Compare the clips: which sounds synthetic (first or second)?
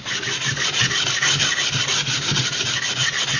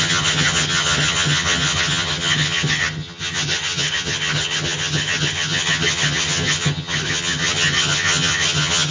second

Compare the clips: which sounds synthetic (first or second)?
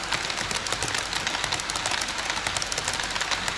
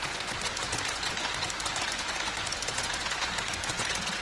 second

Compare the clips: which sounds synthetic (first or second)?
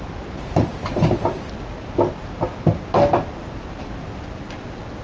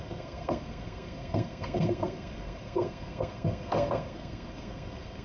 second